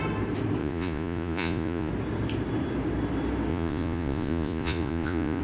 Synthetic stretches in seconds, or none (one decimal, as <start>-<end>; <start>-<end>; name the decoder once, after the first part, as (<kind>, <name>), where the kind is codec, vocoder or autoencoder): 0.6-1.9 (vocoder, Vocos); 3.5-5.4